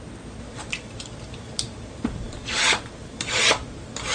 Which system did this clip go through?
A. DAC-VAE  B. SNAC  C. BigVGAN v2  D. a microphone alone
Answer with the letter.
C